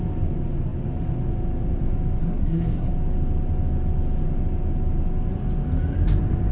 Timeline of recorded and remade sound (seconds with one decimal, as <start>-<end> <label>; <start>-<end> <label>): 0.0-2.2 recorded; 2.2-2.9 remade; 2.9-6.5 recorded